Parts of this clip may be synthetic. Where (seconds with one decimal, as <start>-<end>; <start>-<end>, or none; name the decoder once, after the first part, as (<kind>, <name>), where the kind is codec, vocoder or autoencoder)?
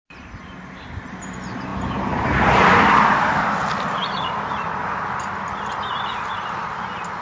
none